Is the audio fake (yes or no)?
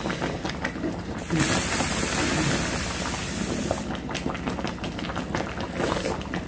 no